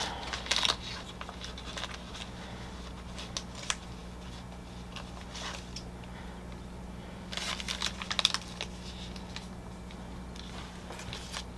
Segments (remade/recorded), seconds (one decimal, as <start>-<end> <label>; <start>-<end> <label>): 0.0-11.6 recorded